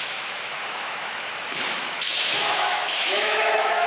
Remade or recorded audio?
remade